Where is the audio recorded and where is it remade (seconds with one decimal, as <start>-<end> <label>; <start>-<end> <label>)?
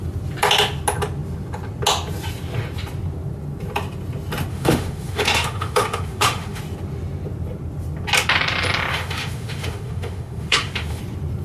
0.0-4.5 recorded; 4.5-6.6 remade; 6.6-8.9 recorded; 8.9-11.0 remade; 11.0-11.4 recorded